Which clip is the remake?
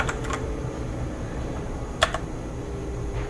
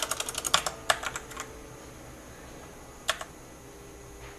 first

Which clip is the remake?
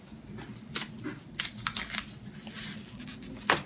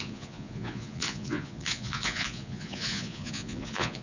second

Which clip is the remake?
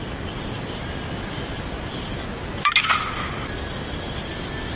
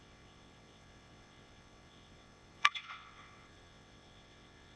second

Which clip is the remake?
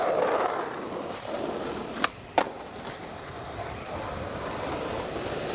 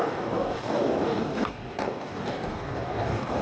second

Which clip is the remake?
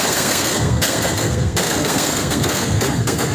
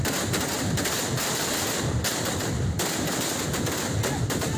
first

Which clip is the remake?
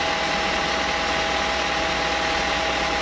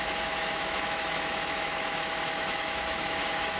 second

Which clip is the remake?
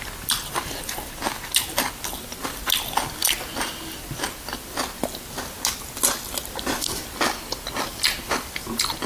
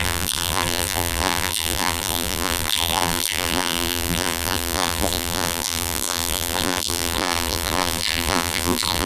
second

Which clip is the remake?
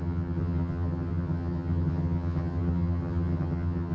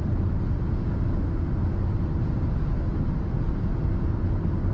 first